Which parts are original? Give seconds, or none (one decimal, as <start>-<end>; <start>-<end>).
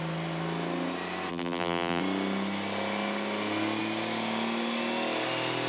0.0-1.3; 2.0-5.7